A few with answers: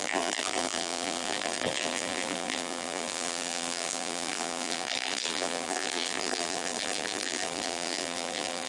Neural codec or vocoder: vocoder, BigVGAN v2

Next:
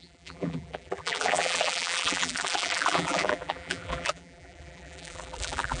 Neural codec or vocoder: vocoder, BigVGAN v2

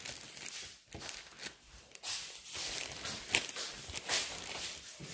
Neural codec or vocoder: none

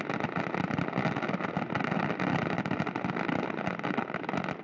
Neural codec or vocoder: none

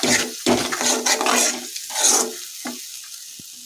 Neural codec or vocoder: none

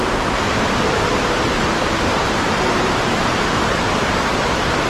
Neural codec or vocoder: vocoder, BigVGAN v2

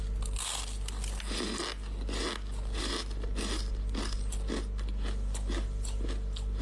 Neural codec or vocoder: none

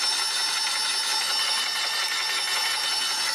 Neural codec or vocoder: none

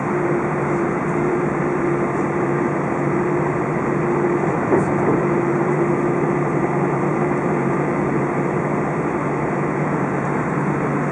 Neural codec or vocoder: vocoder, BigVGAN v2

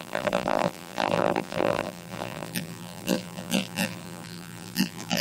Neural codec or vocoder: vocoder, BigVGAN v2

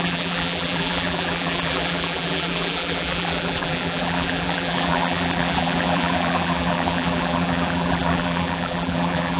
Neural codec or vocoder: vocoder, BigVGAN v2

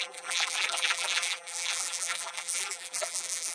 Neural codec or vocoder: vocoder, BigVGAN v2